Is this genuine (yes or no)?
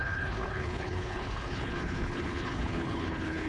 no